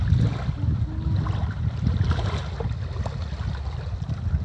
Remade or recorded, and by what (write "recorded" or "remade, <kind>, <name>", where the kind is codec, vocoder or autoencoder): recorded